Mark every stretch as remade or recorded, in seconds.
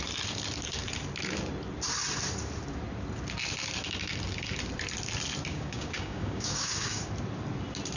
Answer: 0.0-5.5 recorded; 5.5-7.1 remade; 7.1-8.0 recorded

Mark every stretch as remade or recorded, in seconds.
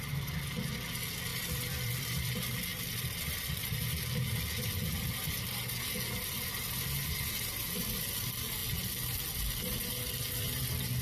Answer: 0.0-1.3 recorded; 1.3-2.3 remade; 2.3-2.7 recorded; 2.7-3.8 remade; 3.8-11.0 recorded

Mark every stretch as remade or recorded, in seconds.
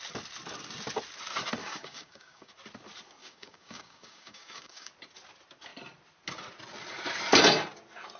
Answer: 0.0-1.6 recorded; 1.6-2.5 remade; 2.5-3.2 recorded; 3.2-4.9 remade; 4.9-8.2 recorded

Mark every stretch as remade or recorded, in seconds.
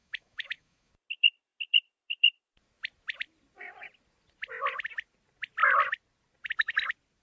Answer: 0.0-0.9 remade; 0.9-7.2 recorded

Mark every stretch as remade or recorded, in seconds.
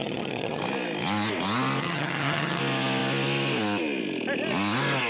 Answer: 0.0-0.6 remade; 0.6-1.8 recorded; 1.8-2.6 remade; 2.6-5.1 recorded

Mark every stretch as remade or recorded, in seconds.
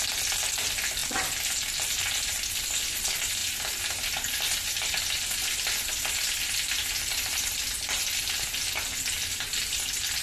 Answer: 0.0-10.2 recorded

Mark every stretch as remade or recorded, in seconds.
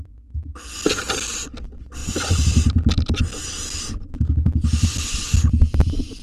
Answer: 0.0-2.0 recorded; 2.0-3.2 remade; 3.2-6.2 recorded